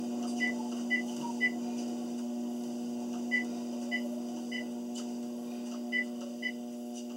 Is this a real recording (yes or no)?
yes